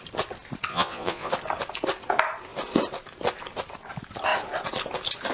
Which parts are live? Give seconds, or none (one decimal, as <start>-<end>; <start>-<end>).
0.0-0.7; 1.3-5.3